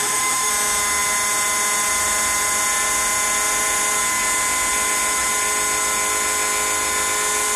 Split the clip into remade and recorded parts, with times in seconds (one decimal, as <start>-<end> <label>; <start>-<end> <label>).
0.0-0.5 remade; 0.5-7.6 recorded